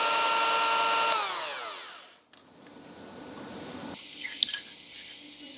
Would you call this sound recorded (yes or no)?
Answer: yes